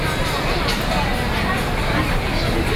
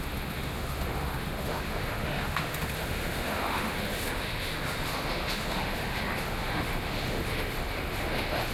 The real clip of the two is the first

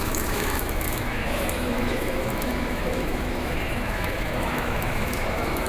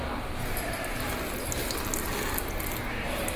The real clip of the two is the second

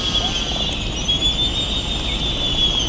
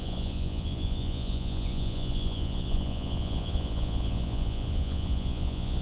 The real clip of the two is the first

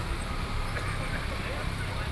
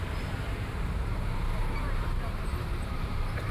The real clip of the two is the first